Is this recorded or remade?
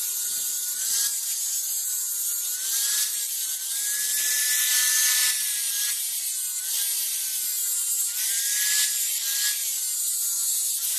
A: recorded